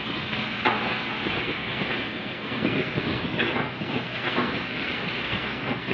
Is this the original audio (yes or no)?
no